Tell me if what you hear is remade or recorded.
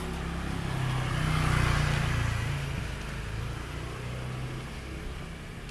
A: recorded